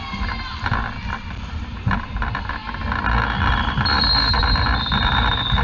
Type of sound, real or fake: real